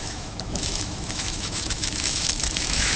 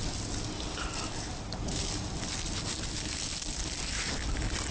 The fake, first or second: first